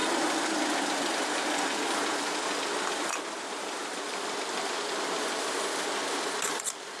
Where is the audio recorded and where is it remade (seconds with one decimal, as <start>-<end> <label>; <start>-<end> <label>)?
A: 0.0-2.9 recorded; 2.9-3.8 remade; 3.8-4.9 recorded; 4.9-7.0 remade